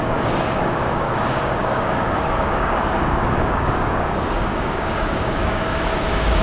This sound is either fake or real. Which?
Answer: fake